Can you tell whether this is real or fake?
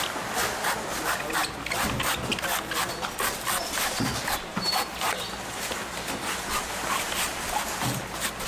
real